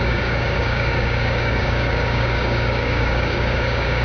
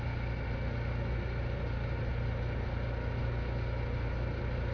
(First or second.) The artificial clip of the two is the first